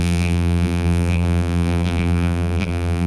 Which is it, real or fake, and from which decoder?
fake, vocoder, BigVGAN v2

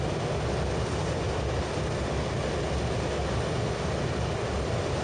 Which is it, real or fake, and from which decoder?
real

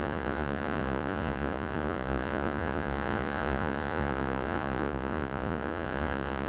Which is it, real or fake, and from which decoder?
fake, vocoder, Vocos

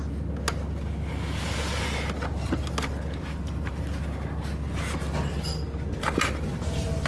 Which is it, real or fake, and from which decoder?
real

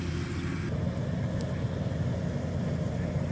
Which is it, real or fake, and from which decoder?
real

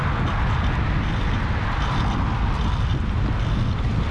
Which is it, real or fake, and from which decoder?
real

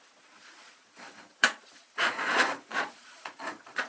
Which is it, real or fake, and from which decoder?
fake, vocoder, Vocos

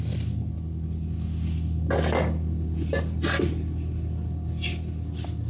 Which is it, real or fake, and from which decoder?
real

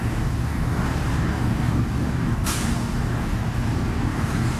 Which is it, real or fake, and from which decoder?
fake, codec, DAC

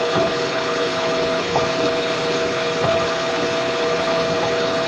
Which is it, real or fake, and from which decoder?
fake, codec, HILCodec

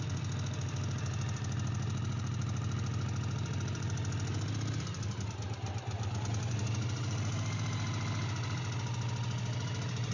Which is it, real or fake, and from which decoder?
real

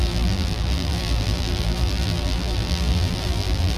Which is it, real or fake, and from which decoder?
fake, vocoder, BigVGAN v2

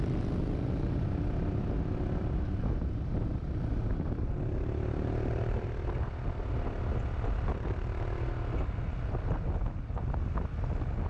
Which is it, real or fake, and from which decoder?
real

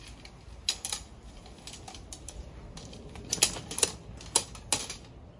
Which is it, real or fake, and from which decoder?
real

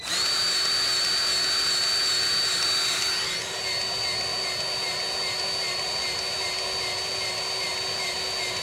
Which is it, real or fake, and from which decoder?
real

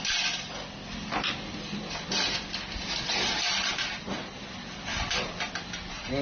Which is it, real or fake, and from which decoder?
real